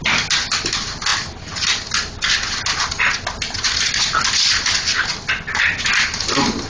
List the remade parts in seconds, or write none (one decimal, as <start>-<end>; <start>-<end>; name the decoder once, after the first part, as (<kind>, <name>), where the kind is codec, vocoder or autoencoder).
none